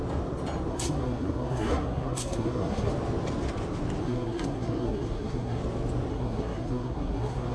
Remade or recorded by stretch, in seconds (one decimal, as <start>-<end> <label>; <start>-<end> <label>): 0.0-0.7 recorded; 0.7-2.9 remade; 2.9-4.0 recorded; 4.0-5.6 remade; 5.6-6.1 recorded; 6.1-7.5 remade